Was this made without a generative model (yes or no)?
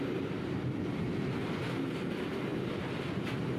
no